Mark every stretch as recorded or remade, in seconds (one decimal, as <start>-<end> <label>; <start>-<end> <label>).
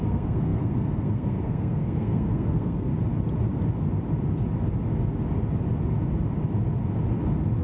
0.0-2.9 remade; 2.9-7.6 recorded